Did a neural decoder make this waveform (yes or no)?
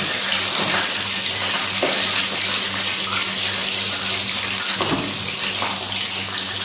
no